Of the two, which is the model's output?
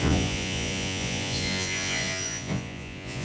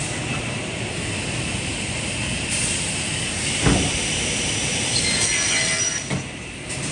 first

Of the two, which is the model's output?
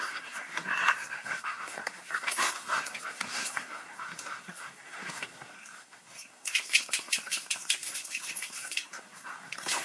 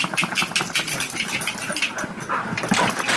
first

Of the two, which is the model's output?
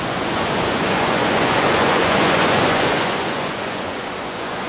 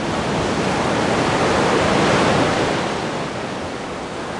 first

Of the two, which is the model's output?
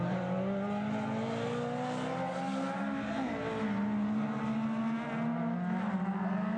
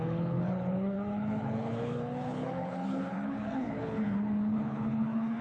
second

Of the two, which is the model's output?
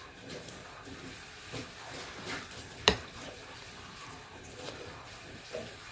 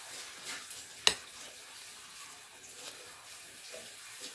first